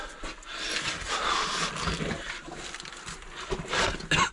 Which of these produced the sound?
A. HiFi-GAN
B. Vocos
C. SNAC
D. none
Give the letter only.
D